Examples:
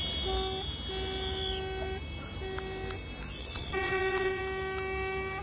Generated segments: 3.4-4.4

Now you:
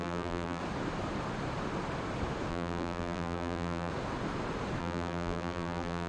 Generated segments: 0.0-0.6; 2.5-3.9; 4.8-6.1